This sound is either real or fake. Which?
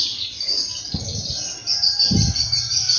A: real